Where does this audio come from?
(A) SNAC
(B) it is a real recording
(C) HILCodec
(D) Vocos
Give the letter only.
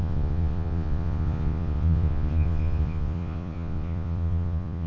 D